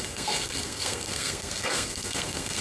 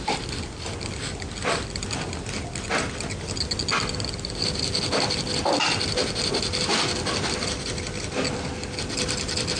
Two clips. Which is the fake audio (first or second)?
first